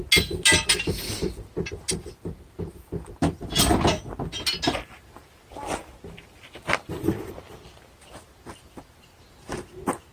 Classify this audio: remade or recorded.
recorded